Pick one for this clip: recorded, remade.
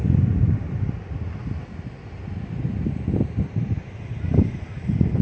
recorded